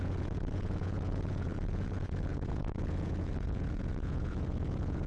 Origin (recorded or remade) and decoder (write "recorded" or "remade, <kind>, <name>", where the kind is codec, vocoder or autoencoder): remade, vocoder, Vocos